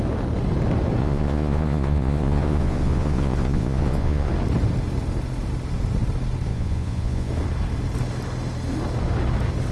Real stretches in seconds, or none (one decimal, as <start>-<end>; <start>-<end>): 0.0-1.0; 4.3-6.5; 7.3-9.7